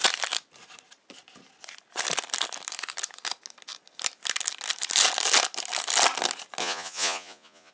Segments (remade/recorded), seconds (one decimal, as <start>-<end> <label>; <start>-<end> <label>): 0.0-6.6 recorded; 6.6-7.7 remade